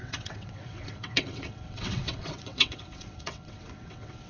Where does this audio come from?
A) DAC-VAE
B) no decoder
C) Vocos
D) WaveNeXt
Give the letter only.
D